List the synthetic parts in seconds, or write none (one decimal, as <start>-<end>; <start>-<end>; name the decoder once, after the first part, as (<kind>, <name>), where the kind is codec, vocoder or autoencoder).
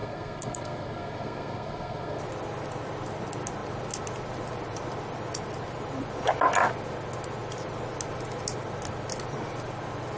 0.0-2.2 (codec, SNAC)